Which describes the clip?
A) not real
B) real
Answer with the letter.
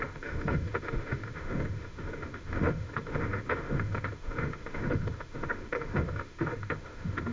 A